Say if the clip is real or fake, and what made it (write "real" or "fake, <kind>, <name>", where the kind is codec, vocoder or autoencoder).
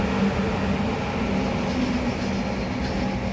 real